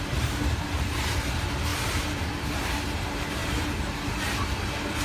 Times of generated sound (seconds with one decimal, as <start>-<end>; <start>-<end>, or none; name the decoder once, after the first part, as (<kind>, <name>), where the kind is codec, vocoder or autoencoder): 1.7-2.7 (vocoder, BigVGAN v2); 3.4-4.1